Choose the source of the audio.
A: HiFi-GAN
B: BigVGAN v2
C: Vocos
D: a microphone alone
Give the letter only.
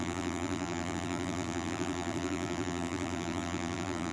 B